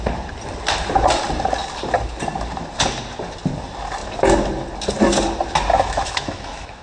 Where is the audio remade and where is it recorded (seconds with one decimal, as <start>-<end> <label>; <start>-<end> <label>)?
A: 0.0-5.7 recorded; 5.7-6.8 remade